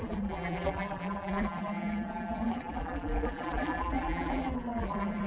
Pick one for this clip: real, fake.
fake